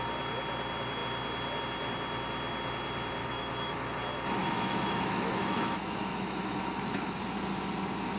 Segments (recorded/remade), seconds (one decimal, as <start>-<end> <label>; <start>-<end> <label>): 0.0-3.2 recorded; 3.2-3.9 remade; 3.9-4.4 recorded; 4.4-7.2 remade; 7.2-8.2 recorded